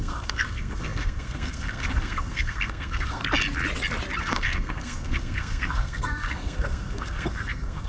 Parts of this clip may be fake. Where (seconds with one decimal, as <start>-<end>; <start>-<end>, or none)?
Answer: 0.0-3.2; 4.2-7.9